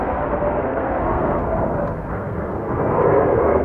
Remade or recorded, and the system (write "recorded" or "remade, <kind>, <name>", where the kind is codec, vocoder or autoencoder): remade, codec, SNAC